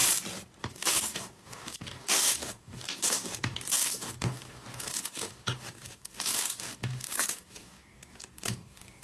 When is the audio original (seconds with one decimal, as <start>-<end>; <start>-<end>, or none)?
0.0-0.6